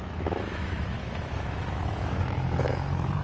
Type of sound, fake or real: fake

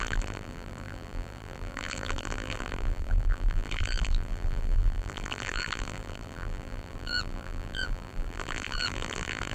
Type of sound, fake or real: fake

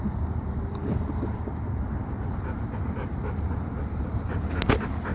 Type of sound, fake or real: real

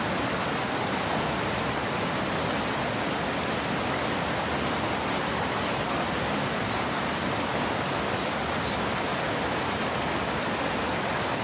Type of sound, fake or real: real